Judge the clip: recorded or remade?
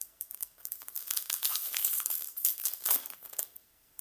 remade